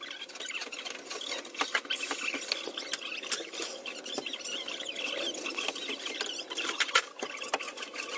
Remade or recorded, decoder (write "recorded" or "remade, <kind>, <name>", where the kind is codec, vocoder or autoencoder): recorded